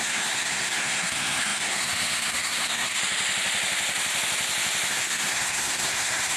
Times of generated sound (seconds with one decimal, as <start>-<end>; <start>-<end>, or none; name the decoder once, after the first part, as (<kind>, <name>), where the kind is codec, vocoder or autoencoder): 0.0-3.0 (codec, SNAC); 4.9-6.4